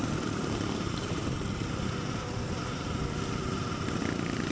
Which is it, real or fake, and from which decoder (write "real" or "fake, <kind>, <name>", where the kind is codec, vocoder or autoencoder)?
real